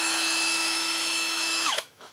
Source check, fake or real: fake